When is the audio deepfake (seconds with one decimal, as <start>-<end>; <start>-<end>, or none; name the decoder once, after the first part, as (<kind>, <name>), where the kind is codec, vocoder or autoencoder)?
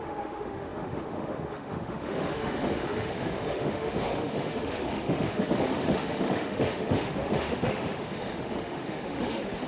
0.0-9.7 (autoencoder, DAC-VAE)